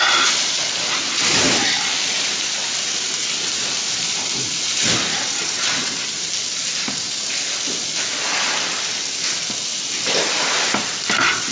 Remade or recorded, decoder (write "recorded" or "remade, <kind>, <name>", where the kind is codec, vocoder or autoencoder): recorded